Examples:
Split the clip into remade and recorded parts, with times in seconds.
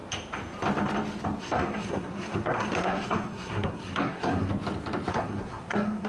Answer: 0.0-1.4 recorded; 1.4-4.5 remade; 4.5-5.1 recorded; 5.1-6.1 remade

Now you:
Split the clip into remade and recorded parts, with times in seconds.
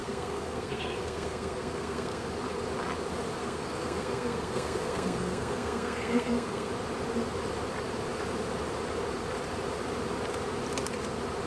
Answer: 0.0-2.3 remade; 2.3-3.4 recorded; 3.4-6.7 remade; 6.7-11.5 recorded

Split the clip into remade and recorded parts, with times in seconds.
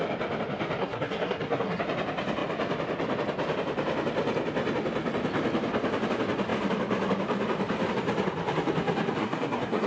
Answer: 0.0-0.8 recorded; 0.8-1.8 remade; 1.8-9.2 recorded; 9.2-9.9 remade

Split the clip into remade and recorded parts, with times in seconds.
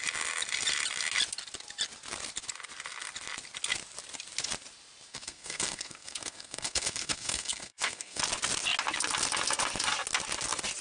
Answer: 0.0-5.1 recorded; 5.1-8.2 remade; 8.2-10.8 recorded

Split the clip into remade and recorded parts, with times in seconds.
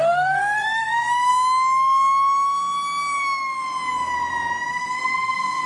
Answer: 0.0-1.3 remade; 1.3-4.7 recorded; 4.7-5.7 remade